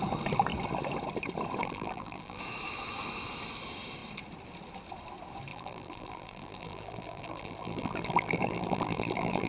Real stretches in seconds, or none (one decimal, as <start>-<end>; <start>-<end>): 0.0-1.6; 2.4-5.5